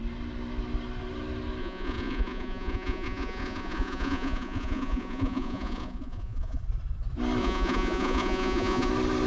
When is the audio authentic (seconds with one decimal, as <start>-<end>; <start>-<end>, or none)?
0.0-1.6; 6.6-7.4; 8.9-9.3